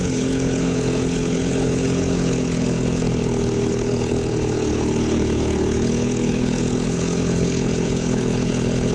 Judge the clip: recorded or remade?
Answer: remade